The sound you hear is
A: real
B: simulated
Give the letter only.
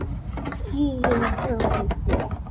A